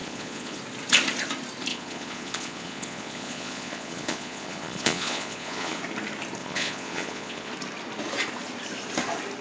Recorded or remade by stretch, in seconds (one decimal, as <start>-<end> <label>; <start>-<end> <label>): 0.0-0.6 remade; 0.6-1.7 recorded; 1.7-5.8 remade; 5.8-6.4 recorded; 6.4-7.5 remade; 7.5-9.4 recorded